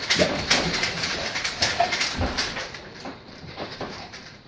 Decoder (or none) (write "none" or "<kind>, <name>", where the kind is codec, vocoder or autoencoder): vocoder, BigVGAN v2